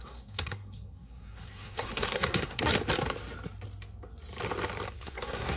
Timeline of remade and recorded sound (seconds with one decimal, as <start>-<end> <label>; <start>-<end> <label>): 0.0-2.7 remade; 2.7-4.9 recorded; 4.9-5.6 remade